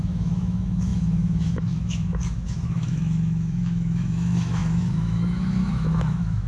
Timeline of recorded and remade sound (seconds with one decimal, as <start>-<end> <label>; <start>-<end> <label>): 0.0-6.5 remade